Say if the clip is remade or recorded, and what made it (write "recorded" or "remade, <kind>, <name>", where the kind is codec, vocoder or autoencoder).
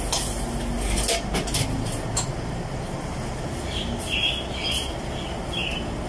recorded